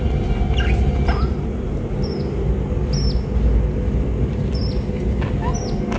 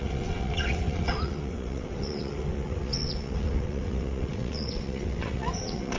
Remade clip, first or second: second